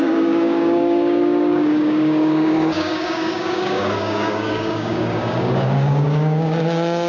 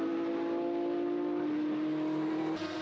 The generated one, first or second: first